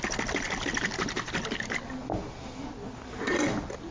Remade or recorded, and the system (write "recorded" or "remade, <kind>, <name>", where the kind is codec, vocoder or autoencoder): recorded